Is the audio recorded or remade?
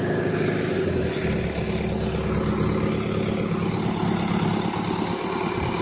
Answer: recorded